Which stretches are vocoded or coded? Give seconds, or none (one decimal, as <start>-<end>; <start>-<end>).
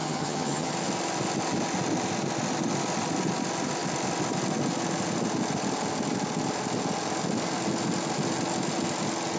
0.0-0.7